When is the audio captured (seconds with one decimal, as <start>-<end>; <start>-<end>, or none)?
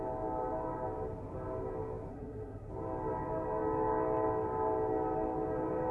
0.0-2.1; 2.7-5.9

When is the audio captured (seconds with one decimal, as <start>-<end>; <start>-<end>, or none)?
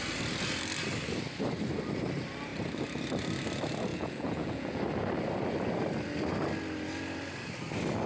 0.0-3.9; 4.8-8.1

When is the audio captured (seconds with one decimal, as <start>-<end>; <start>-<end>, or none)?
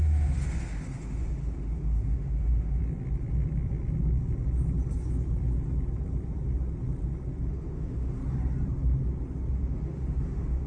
2.8-7.5; 8.2-9.5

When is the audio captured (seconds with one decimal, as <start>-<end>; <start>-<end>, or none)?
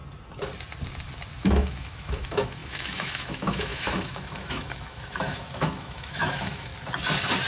0.0-1.4; 6.7-7.5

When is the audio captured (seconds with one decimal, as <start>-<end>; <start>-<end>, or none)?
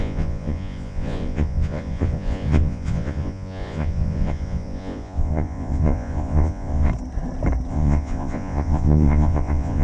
6.9-7.7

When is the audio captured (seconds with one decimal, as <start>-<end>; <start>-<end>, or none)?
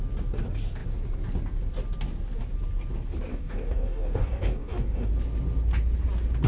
0.0-3.3; 5.1-6.5